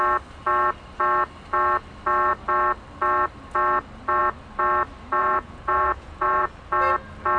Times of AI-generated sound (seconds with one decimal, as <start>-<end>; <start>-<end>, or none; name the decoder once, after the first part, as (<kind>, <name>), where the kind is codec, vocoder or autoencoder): 5.2-6.5 (vocoder, Vocos)